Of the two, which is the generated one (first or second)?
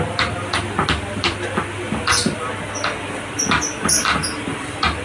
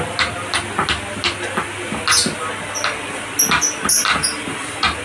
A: first